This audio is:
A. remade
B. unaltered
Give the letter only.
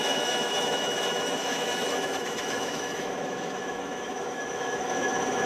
A